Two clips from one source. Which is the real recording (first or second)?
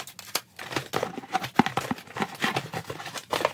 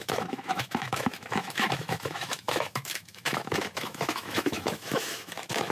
first